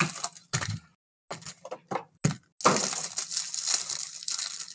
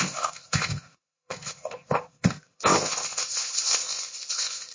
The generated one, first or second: second